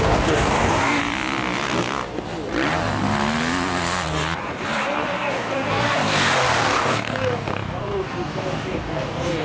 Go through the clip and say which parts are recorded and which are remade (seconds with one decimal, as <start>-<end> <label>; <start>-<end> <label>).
0.0-1.0 remade; 1.0-5.3 recorded; 5.3-9.4 remade